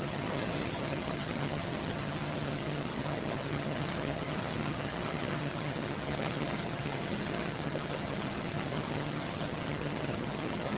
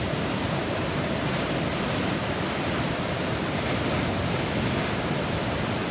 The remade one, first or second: first